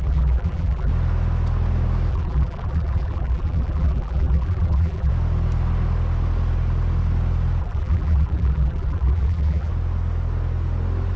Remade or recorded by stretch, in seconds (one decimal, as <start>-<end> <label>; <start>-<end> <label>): 0.0-0.9 remade; 0.9-2.1 recorded; 2.1-5.1 remade; 5.1-7.6 recorded; 7.6-9.7 remade; 9.7-11.2 recorded